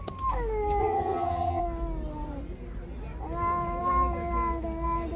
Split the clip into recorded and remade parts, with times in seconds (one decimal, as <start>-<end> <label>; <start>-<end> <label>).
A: 0.0-0.8 recorded; 0.8-1.6 remade; 1.6-5.2 recorded